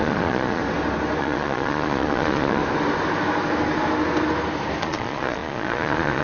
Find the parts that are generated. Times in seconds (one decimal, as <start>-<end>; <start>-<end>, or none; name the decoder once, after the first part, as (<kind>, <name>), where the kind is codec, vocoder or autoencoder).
0.0-0.6 (vocoder, Vocos); 1.2-2.6; 4.8-6.2